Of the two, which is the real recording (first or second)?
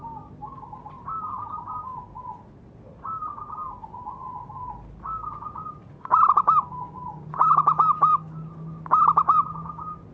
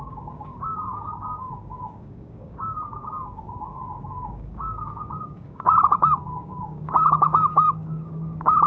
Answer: first